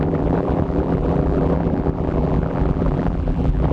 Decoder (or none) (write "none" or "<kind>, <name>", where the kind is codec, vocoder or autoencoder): vocoder, BigVGAN v2